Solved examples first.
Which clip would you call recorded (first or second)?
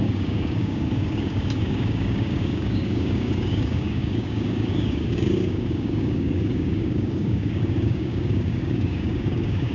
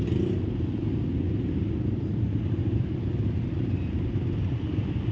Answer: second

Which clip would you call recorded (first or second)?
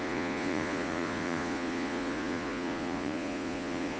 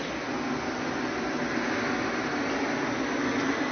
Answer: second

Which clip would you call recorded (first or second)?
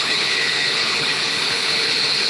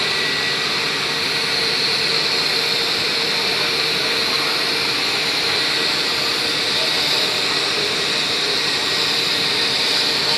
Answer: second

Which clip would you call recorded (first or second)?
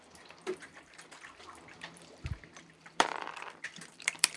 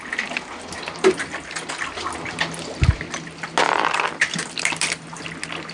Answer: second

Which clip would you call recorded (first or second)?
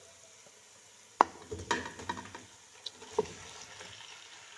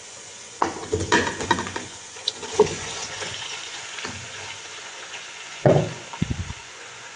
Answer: first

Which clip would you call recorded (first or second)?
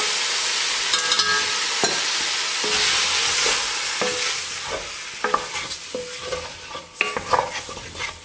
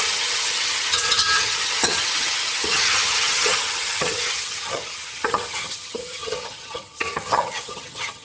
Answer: first